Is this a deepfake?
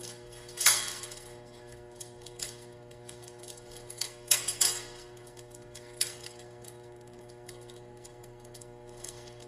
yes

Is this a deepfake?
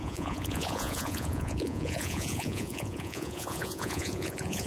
yes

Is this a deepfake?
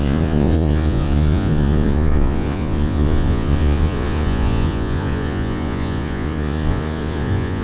yes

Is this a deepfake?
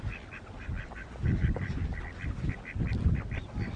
no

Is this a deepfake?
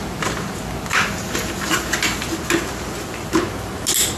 no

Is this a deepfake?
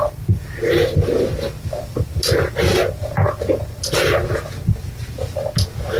no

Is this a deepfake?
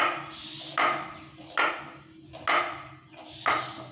no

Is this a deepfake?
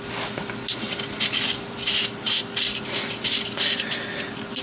no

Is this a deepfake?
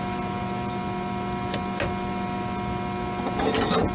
no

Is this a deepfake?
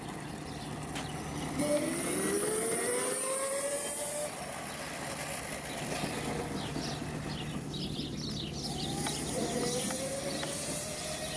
no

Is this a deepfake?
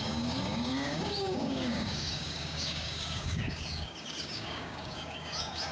yes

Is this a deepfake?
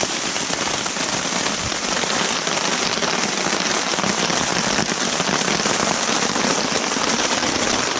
no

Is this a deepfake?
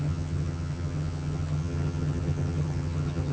yes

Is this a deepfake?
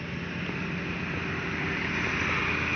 no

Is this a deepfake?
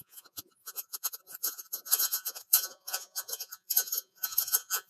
yes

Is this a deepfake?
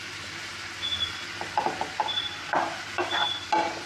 no